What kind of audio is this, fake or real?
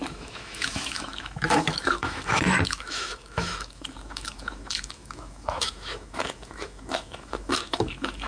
fake